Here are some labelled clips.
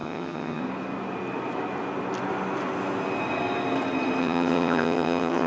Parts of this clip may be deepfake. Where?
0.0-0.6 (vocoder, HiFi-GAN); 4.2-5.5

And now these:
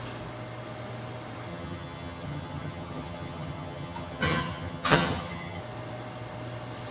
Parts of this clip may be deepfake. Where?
1.5-5.6 (vocoder, HiFi-GAN)

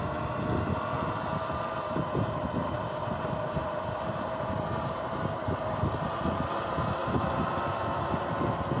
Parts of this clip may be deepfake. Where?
none

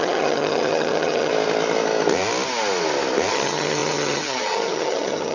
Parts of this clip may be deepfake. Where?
0.0-1.3 (vocoder, HiFi-GAN); 3.3-5.3

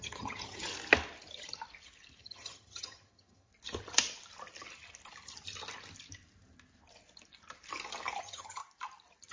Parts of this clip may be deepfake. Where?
0.0-0.7 (vocoder, HiFi-GAN); 2.2-3.5; 8.2-8.6

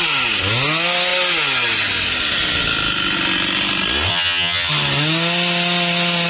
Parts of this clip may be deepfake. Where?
4.1-4.7 (vocoder, HiFi-GAN)

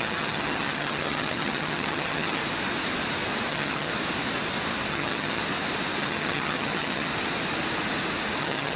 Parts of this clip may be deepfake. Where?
0.0-2.4 (vocoder, HiFi-GAN); 3.5-3.9; 4.9-5.4; 6.0-7.1; 8.4-8.8